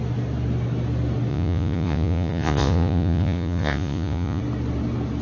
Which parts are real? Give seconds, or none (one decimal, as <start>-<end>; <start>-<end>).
0.0-1.3; 4.4-5.2